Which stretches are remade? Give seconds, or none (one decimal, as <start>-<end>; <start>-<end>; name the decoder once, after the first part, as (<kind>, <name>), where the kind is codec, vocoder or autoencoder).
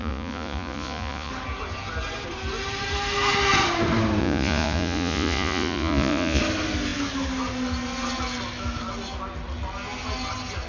0.0-1.3 (vocoder, Vocos); 4.2-6.4